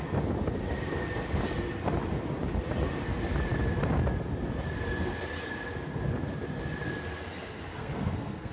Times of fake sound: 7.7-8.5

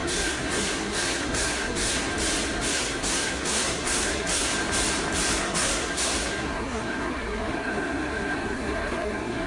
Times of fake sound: 0.0-2.1; 2.7-4.5; 5.4-9.5

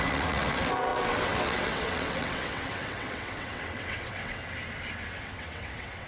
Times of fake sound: 0.0-4.4; 5.2-6.1

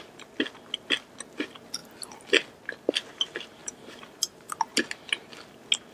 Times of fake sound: 3.6-4.5

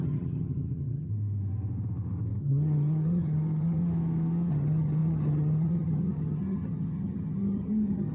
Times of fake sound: 0.0-1.1; 2.4-3.8; 4.5-8.1

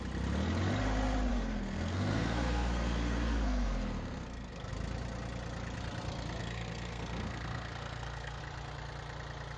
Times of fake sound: 1.3-4.7; 6.4-8.4

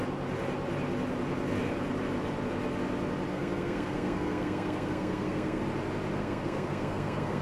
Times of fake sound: 3.3-5.6; 6.2-7.4

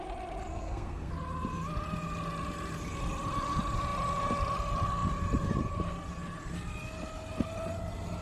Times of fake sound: 0.5-1.1